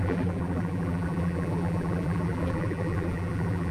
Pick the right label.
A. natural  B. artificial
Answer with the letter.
B